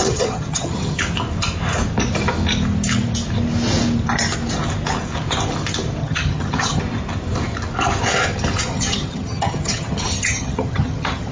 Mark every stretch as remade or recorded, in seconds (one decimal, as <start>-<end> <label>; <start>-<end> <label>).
0.0-1.0 remade; 1.0-6.0 recorded; 6.0-6.8 remade; 6.8-8.7 recorded; 8.7-11.3 remade